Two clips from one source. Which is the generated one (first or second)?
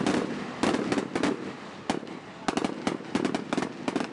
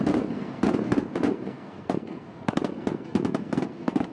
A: second